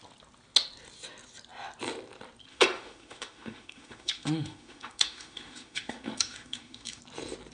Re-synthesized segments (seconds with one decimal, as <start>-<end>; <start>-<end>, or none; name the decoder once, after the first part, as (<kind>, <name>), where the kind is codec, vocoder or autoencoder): 2.5-7.0 (autoencoder, DAC-VAE)